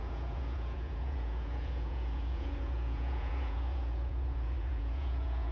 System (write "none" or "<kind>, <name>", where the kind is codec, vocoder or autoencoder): vocoder, Vocos